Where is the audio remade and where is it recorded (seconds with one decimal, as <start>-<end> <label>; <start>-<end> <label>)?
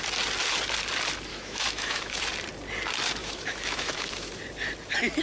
0.0-1.3 recorded; 1.3-2.2 remade; 2.2-3.2 recorded; 3.2-4.3 remade; 4.3-5.2 recorded